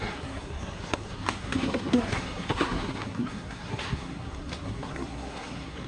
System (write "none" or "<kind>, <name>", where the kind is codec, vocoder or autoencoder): codec, SNAC